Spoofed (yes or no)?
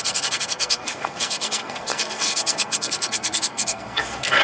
yes